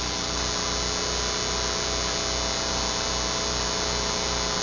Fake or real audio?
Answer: real